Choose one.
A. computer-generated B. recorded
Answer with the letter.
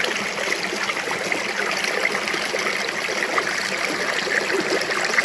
B